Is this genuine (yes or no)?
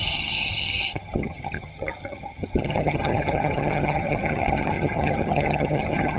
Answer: no